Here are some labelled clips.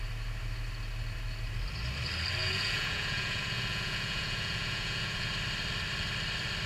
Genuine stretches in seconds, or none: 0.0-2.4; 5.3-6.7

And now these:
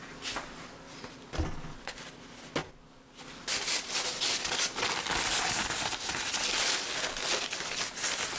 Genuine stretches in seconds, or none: 0.0-8.4

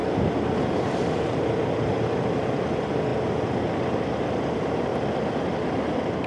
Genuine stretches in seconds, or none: 0.0-0.6; 3.1-3.8; 4.9-5.7

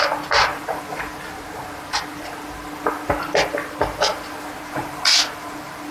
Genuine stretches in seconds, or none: 0.0-0.5; 2.3-5.9

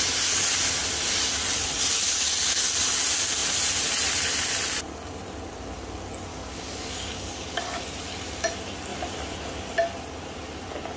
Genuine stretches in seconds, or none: 0.0-6.3; 7.8-11.0

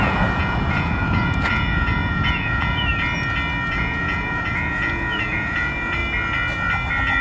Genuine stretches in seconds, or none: 2.9-3.7; 6.0-7.2

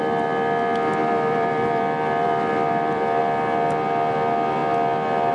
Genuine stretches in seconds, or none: 0.0-1.0; 3.2-5.3

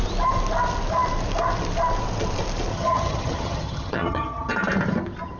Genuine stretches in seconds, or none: 0.0-2.7; 4.5-5.4